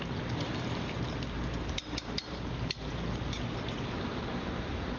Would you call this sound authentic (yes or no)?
no